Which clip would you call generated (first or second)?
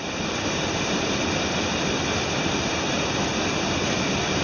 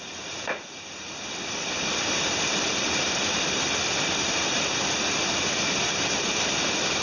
second